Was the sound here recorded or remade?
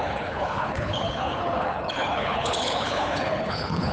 remade